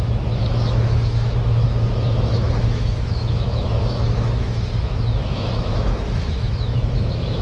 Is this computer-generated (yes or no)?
yes